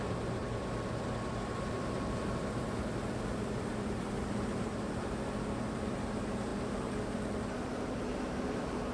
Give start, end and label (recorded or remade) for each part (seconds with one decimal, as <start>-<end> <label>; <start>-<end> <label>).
0.0-0.4 remade; 0.4-1.7 recorded; 1.7-8.9 remade